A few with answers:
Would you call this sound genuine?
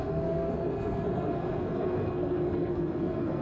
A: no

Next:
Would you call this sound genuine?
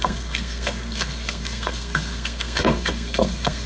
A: no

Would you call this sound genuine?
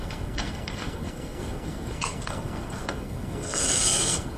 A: no